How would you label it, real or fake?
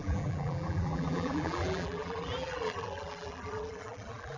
fake